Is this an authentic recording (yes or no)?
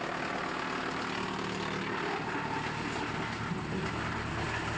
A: yes